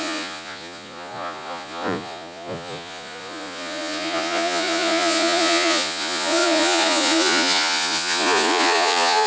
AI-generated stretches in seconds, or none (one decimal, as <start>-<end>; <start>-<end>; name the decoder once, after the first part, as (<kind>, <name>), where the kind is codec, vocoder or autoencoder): 0.0-9.3 (vocoder, Vocos)